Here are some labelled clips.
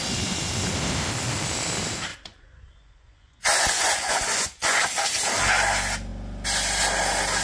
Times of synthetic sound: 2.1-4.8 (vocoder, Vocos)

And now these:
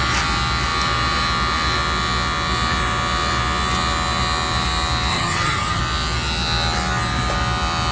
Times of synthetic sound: 5.1-5.8 (vocoder, HiFi-GAN)

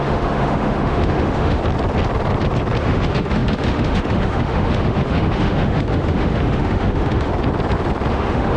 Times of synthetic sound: 0.0-1.6 (autoencoder, DAC-VAE); 2.8-7.3; 8.1-8.6

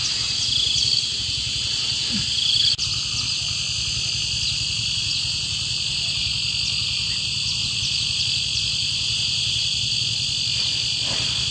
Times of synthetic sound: none

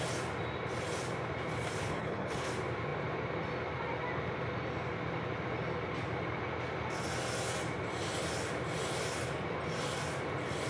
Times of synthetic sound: 1.8-2.5 (codec, HILCodec)

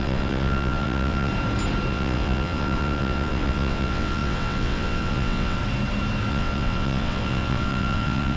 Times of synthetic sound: 0.0-1.3 (vocoder, WaveNeXt); 1.9-5.6; 6.3-8.4